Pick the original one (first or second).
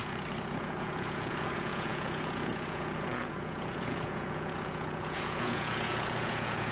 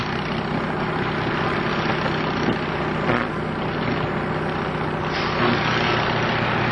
second